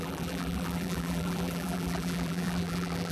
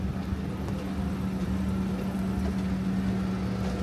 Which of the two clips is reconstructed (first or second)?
first